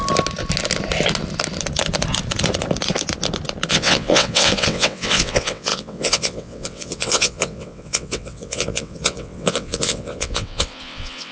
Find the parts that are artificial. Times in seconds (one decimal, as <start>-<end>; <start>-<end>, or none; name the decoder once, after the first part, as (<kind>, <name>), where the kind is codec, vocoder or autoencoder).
3.7-11.3 (vocoder, WaveNeXt)